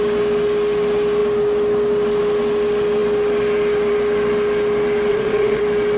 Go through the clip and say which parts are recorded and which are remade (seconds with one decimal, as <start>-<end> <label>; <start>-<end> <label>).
0.0-5.1 recorded; 5.1-5.6 remade; 5.6-6.0 recorded